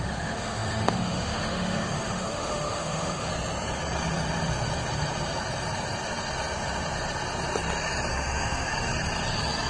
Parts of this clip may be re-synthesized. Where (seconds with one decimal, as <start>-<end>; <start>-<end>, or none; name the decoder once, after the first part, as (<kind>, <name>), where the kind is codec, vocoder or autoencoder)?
0.0-3.3 (autoencoder, DAC-VAE); 8.1-8.9